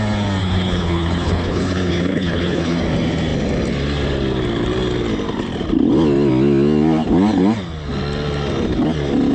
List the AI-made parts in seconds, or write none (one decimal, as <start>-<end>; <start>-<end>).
0.4-2.8